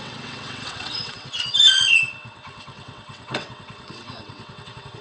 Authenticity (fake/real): fake